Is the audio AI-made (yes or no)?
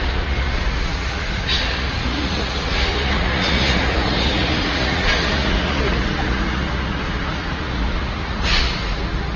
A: yes